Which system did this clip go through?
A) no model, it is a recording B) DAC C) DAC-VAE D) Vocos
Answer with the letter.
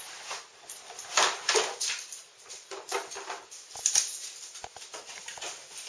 A